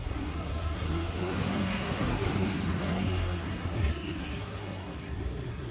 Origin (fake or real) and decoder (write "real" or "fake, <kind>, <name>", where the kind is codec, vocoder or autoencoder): fake, codec, SNAC